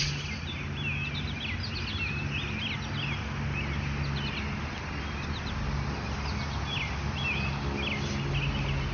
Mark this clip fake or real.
real